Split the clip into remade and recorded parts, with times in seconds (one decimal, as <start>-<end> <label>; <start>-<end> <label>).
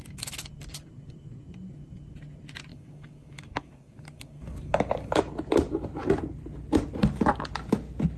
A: 0.0-2.7 recorded; 2.7-5.2 remade; 5.2-8.2 recorded